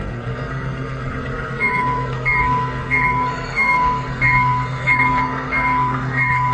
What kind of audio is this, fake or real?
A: fake